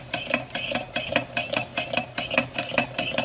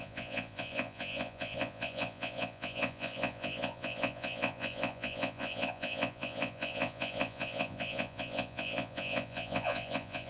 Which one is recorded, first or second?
first